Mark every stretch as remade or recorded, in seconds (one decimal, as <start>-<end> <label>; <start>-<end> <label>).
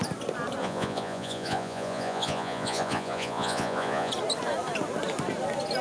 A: 0.0-0.6 recorded; 0.6-4.1 remade; 4.1-5.8 recorded